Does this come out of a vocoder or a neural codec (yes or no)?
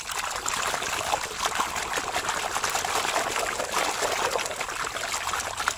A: no